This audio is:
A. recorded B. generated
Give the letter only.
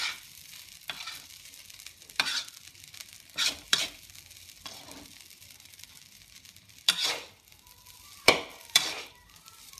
B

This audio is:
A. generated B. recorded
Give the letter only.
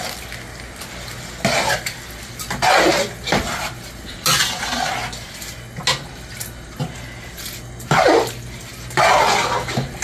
B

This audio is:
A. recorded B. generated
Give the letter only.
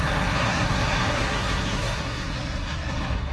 B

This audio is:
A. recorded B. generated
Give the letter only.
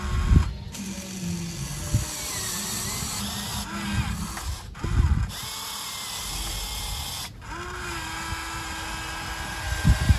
A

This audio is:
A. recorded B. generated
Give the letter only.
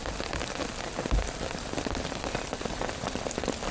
A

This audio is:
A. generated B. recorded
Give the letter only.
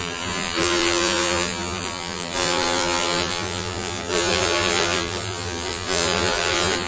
A